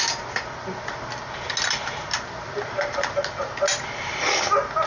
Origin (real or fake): real